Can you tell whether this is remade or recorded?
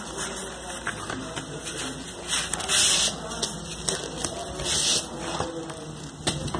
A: recorded